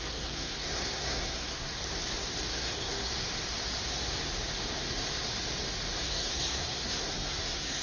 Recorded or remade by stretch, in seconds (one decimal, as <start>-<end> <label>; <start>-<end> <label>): 0.0-1.8 remade; 1.8-2.5 recorded; 2.5-3.1 remade; 3.1-6.0 recorded; 6.0-7.8 remade

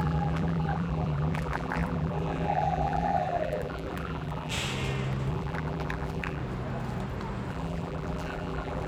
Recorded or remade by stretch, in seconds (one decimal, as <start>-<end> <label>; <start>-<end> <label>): 0.0-4.5 remade; 4.5-5.3 recorded; 5.3-6.4 remade; 6.4-7.5 recorded; 7.5-8.9 remade

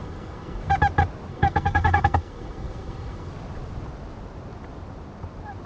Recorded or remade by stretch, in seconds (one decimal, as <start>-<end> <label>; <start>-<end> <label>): 0.0-0.7 remade; 0.7-1.3 recorded; 1.3-3.3 remade; 3.3-5.7 recorded

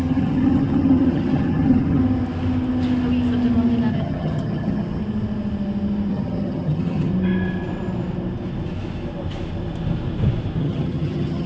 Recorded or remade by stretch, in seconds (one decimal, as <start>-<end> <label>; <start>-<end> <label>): 0.0-2.0 remade; 2.0-3.9 recorded; 3.9-5.0 remade; 5.0-6.1 recorded; 6.1-7.1 remade; 7.1-10.6 recorded; 10.6-11.5 remade

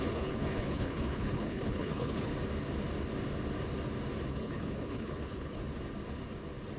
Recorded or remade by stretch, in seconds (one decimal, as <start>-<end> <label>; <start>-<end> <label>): 0.0-2.3 remade; 2.3-4.3 recorded; 4.3-5.6 remade; 5.6-6.8 recorded

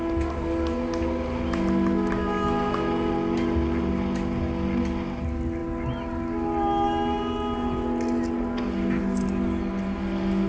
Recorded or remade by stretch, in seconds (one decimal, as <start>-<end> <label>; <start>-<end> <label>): 0.0-10.5 recorded

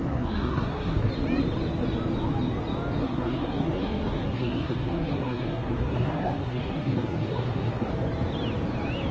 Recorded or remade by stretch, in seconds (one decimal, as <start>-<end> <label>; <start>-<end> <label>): 0.0-1.1 remade; 1.1-3.0 recorded; 3.0-7.9 remade; 7.9-9.1 recorded